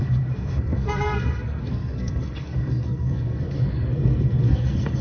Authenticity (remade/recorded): remade